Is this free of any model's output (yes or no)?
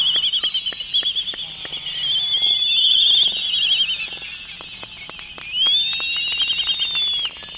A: yes